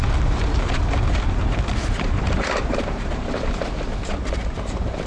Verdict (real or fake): fake